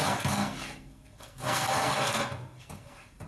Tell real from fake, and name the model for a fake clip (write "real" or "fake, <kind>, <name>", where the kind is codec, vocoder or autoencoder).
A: fake, codec, SNAC